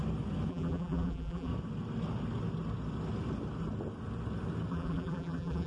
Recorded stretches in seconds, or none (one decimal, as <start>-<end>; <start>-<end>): 0.0-0.5; 1.5-4.7